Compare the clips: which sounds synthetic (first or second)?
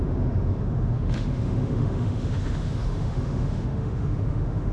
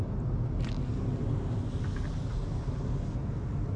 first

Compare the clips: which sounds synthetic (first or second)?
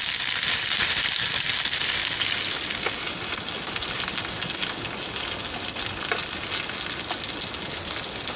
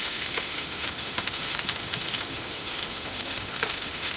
second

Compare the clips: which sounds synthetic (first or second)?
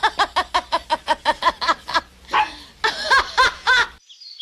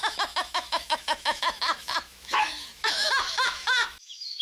second